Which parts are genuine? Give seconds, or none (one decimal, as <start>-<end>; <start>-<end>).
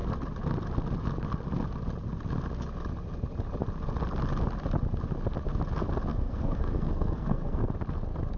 0.0-6.1; 7.7-8.4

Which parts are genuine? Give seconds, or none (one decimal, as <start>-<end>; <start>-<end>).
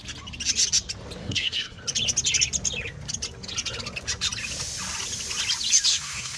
0.0-1.2; 1.8-5.9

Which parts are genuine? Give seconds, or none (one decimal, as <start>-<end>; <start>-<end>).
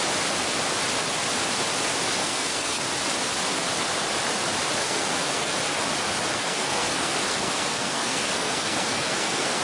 0.0-2.2; 2.8-4.8; 5.5-6.3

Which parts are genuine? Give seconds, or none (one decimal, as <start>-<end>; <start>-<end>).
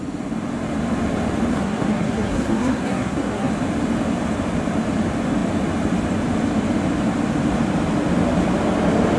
0.0-1.5; 3.5-9.2